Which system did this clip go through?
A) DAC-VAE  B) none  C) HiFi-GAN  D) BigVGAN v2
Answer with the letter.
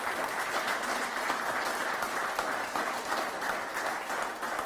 B